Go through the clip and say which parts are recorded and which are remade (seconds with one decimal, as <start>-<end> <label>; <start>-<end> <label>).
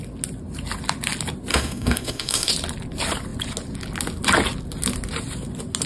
0.0-1.5 recorded; 1.5-2.5 remade; 2.5-5.9 recorded